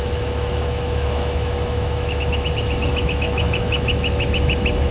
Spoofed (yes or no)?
yes